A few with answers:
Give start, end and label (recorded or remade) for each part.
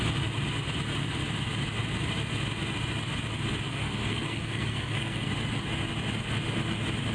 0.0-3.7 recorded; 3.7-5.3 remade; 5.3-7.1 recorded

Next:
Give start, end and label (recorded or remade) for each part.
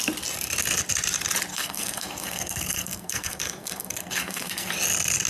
0.0-1.5 recorded; 1.5-4.7 remade; 4.7-5.3 recorded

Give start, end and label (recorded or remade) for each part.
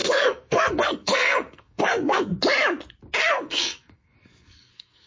0.0-2.3 remade; 2.3-3.2 recorded; 3.2-5.1 remade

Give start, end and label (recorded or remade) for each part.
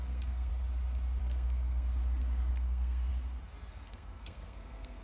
0.0-0.5 remade; 0.5-1.2 recorded; 1.2-1.9 remade; 1.9-2.5 recorded; 2.5-3.1 remade; 3.1-3.7 recorded; 3.7-5.0 remade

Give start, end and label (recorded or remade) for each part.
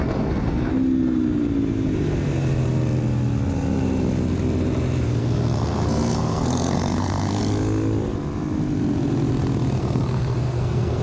0.0-0.7 remade; 0.7-5.2 recorded; 5.2-7.4 remade; 7.4-9.8 recorded; 9.8-11.0 remade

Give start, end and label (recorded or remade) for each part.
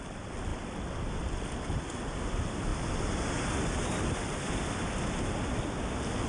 0.0-6.3 recorded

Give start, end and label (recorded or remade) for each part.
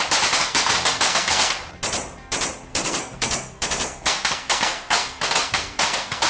0.0-0.4 recorded; 0.4-1.6 remade; 1.6-2.7 recorded; 2.7-6.3 remade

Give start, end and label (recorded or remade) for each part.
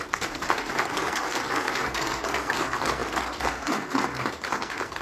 0.0-5.0 remade